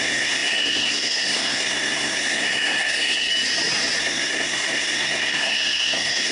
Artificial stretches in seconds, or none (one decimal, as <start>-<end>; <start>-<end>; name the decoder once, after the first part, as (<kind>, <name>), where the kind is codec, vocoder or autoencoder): 0.0-3.3 (codec, SNAC); 4.0-6.3